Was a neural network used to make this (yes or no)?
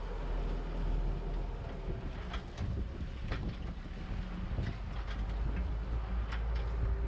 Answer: no